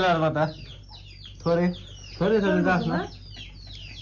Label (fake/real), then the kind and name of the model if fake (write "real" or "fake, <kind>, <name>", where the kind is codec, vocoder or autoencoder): real